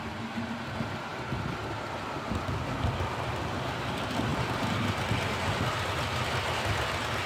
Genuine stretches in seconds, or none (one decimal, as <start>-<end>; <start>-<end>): 0.0-7.3

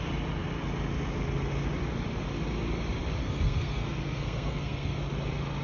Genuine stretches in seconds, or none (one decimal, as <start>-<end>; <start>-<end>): 0.0-3.2; 5.0-5.6